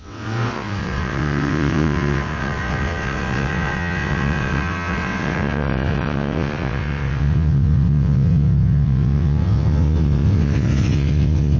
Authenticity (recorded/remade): remade